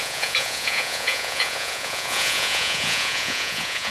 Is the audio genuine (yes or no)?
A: no